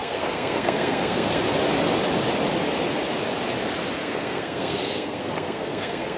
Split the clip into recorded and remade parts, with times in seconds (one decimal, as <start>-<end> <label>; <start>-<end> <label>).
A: 0.0-1.4 remade; 1.4-4.0 recorded; 4.0-6.2 remade